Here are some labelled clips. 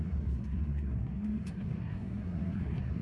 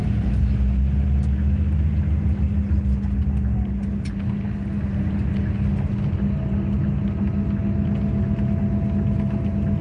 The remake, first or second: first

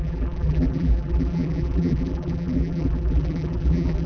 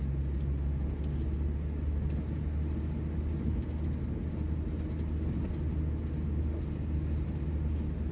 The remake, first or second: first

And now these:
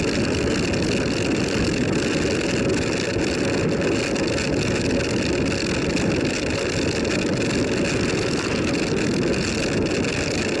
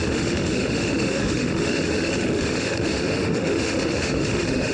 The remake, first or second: second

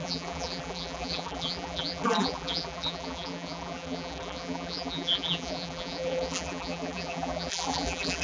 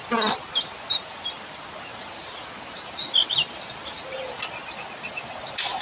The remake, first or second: first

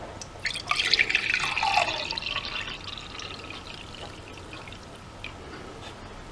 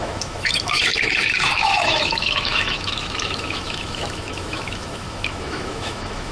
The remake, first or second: second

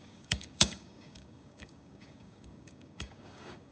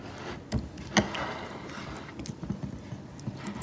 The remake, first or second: first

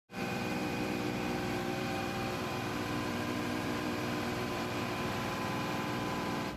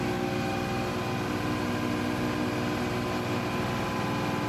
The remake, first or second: first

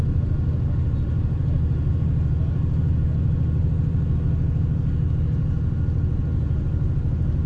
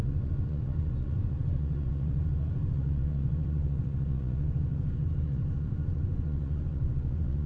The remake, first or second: second